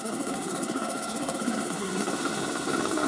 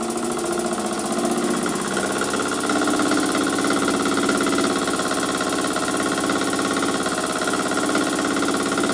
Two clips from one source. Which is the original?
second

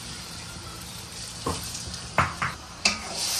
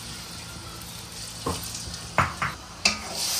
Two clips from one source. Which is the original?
second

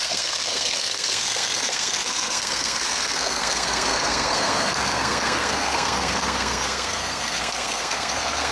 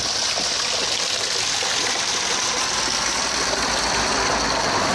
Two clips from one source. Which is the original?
second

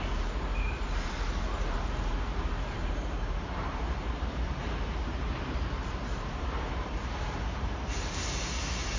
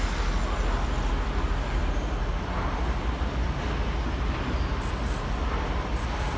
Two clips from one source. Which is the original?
second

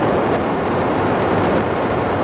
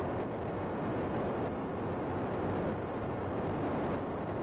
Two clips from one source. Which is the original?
second